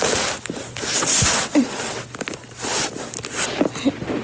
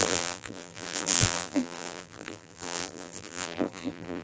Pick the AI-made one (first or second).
second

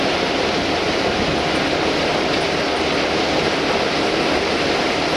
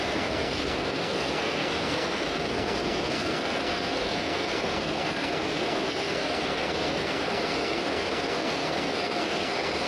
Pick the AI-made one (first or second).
second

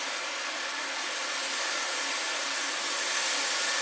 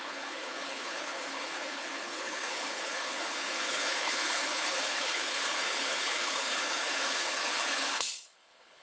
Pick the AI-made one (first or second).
second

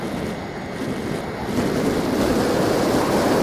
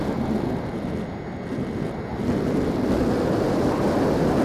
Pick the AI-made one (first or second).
first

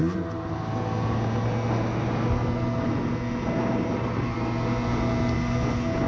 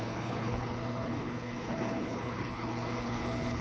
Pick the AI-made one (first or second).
second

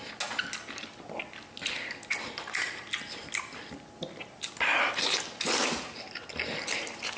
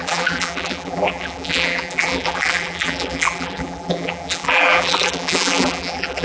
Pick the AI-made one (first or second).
second